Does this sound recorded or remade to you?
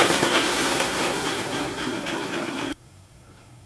remade